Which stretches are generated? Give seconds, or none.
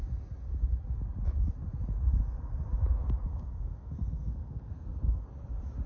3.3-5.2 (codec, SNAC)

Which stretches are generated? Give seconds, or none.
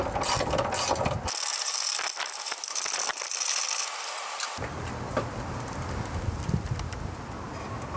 1.5-6.0 (vocoder, BigVGAN v2)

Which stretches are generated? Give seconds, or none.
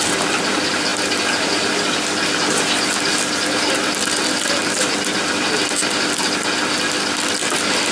none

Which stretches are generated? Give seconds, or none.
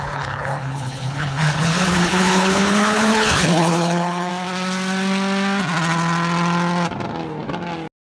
0.0-4.3 (codec, HILCodec)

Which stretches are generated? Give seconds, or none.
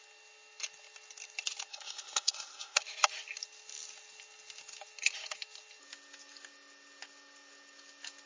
1.7-2.8 (codec, SNAC)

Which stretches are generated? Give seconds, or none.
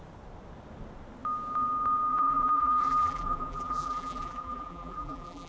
2.1-5.5 (vocoder, BigVGAN v2)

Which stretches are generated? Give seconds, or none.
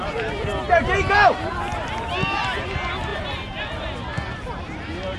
none